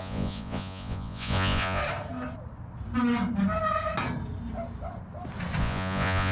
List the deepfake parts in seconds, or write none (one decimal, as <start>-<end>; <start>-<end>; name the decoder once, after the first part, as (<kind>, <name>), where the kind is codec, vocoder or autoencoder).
0.0-1.8 (vocoder, Vocos); 5.6-6.3